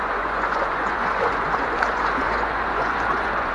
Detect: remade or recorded remade